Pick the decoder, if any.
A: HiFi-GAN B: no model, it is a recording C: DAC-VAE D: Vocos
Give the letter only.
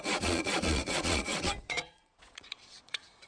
D